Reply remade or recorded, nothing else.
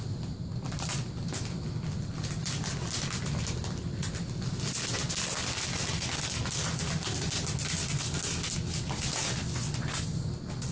recorded